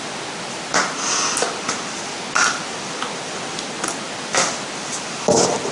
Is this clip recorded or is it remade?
recorded